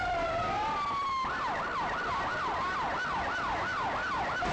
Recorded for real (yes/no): yes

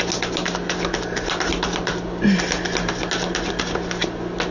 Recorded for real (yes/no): yes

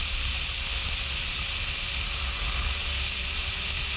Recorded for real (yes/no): yes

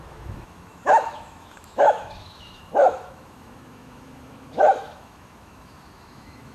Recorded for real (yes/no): no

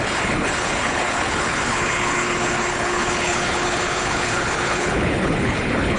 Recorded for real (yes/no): no